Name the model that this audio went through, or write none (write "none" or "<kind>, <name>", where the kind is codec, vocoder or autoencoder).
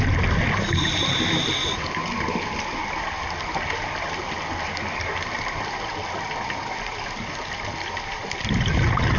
none